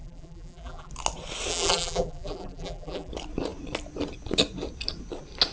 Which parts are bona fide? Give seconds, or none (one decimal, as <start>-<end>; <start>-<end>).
0.9-1.5; 3.1-5.5